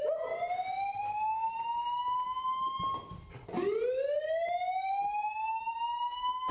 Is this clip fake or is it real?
real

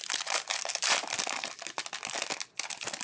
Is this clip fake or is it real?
real